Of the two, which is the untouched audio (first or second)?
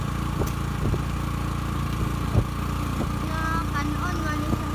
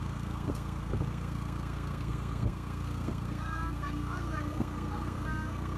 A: first